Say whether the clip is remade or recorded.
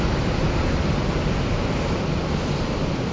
recorded